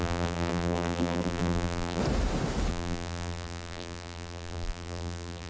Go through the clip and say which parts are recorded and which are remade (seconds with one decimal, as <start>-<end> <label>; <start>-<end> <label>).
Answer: 0.0-2.0 remade; 2.0-2.7 recorded; 2.7-5.5 remade